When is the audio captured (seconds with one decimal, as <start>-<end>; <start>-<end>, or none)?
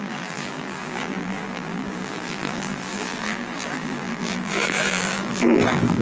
none